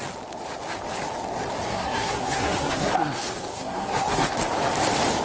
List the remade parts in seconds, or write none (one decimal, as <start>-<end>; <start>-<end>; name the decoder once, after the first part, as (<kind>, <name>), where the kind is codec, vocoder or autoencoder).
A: 1.7-2.9 (codec, SNAC); 3.5-4.3